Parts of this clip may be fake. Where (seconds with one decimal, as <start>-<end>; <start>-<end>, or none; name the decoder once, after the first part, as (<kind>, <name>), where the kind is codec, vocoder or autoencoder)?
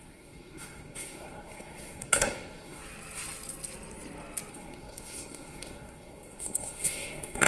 0.0-2.8 (codec, SNAC); 4.5-7.5